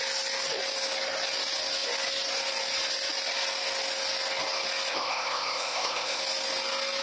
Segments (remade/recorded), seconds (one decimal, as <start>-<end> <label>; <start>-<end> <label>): 0.0-4.9 recorded; 4.9-6.2 remade; 6.2-7.0 recorded